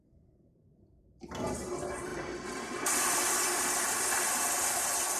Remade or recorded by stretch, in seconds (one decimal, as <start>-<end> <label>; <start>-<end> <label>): 0.0-5.2 recorded

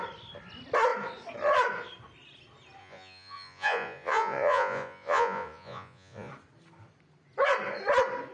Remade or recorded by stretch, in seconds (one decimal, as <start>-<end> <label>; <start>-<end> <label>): 0.0-2.8 recorded; 2.8-6.3 remade; 6.3-8.3 recorded

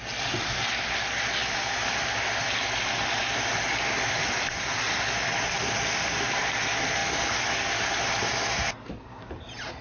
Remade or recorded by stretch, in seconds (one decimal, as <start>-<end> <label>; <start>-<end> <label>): 0.0-9.8 recorded

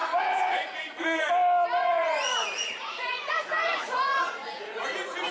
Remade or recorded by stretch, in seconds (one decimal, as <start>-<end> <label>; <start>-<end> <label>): 0.0-1.3 remade; 1.3-1.8 recorded; 1.8-5.3 remade